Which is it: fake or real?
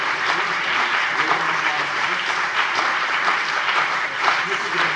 fake